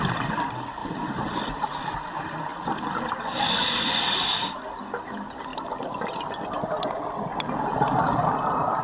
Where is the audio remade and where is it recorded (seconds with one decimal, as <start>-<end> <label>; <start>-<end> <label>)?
0.0-0.8 recorded; 0.8-1.9 remade; 1.9-2.5 recorded; 2.5-4.8 remade; 4.8-5.5 recorded; 5.5-6.5 remade; 6.5-8.8 recorded

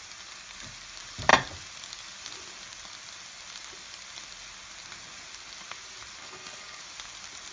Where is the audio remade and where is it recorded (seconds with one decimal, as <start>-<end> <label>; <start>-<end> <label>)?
0.0-6.2 recorded; 6.2-6.8 remade; 6.8-7.5 recorded

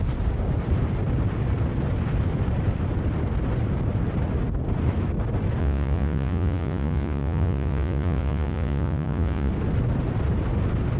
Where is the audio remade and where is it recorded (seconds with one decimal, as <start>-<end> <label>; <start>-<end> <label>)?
0.0-5.6 recorded; 5.6-9.5 remade; 9.5-11.0 recorded

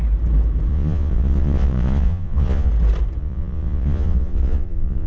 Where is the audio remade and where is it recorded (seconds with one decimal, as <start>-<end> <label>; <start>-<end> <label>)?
0.0-0.7 recorded; 0.7-2.7 remade; 2.7-3.2 recorded; 3.2-5.1 remade

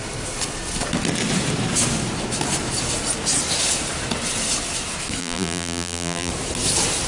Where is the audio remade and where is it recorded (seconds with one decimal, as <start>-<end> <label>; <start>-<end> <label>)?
0.0-5.2 recorded; 5.2-6.3 remade; 6.3-7.1 recorded